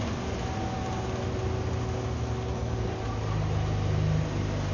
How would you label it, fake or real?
real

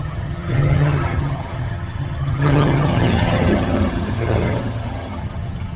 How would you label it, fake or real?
fake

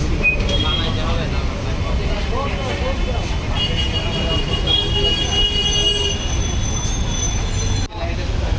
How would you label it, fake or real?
real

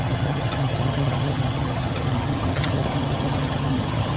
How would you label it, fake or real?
fake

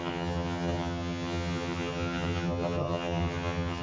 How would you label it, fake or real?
fake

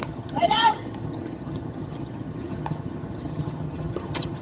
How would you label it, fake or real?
fake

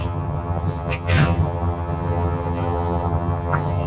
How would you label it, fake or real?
fake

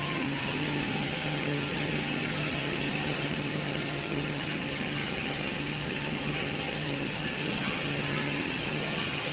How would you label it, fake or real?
fake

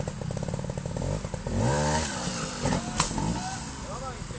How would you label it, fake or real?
real